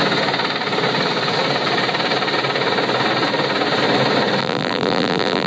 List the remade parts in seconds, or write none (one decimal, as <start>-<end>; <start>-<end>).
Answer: 4.4-5.5